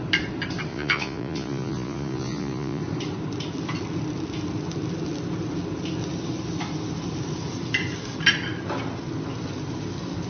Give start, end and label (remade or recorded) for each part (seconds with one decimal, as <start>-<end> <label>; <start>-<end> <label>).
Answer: 0.0-0.7 recorded; 0.7-2.8 remade; 2.8-10.3 recorded